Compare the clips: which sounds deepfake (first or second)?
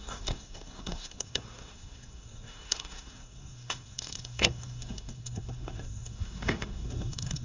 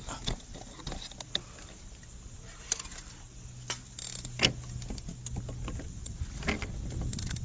first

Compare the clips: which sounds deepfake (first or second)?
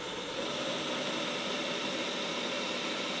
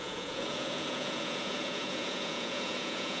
second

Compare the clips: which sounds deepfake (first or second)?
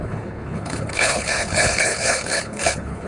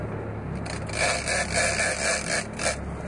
first